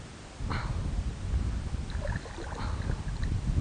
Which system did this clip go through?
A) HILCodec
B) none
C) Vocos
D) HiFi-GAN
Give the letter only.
B